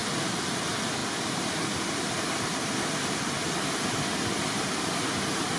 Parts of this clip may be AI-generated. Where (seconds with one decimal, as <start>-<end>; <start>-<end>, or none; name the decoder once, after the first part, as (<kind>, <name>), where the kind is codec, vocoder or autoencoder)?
0.5-5.6 (vocoder, BigVGAN v2)